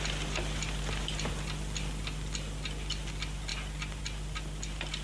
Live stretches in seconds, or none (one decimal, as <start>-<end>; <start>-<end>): 0.0-5.0